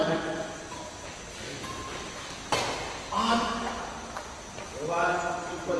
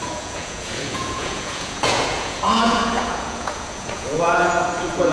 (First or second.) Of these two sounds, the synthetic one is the second